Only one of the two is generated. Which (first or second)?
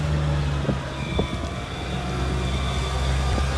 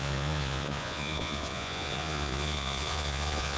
second